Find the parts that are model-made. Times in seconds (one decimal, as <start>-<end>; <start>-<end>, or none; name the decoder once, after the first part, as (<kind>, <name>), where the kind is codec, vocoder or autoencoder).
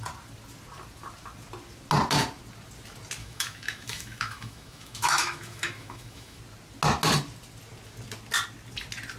3.2-6.4 (autoencoder, DAC-VAE)